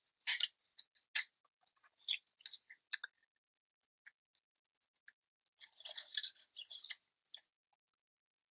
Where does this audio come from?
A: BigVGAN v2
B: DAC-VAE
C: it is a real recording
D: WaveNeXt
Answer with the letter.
C